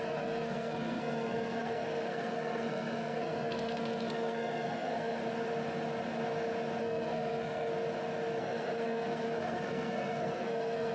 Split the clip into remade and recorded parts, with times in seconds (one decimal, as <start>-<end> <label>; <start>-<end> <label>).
0.0-5.2 remade; 5.2-6.8 recorded; 6.8-7.7 remade; 7.7-8.4 recorded; 8.4-10.9 remade